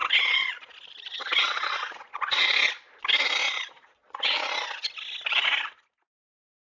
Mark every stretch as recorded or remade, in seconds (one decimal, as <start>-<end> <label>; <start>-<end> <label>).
0.0-0.7 remade; 0.7-1.1 recorded; 1.1-2.5 remade; 2.5-3.4 recorded; 3.4-4.9 remade; 4.9-6.6 recorded